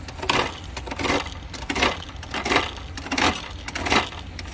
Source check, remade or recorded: recorded